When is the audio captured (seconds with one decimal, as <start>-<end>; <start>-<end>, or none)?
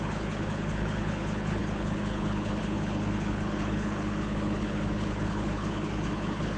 none